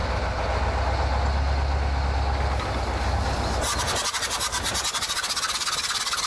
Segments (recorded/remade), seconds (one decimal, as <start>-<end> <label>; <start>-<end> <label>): 0.0-6.3 recorded